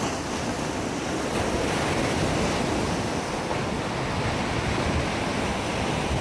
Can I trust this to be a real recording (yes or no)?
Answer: yes